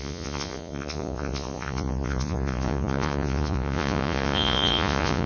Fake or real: fake